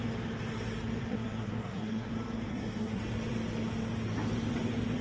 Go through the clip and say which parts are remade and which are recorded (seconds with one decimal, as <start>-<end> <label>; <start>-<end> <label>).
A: 0.0-1.1 recorded; 1.1-2.1 remade; 2.1-2.5 recorded; 2.5-3.0 remade; 3.0-5.0 recorded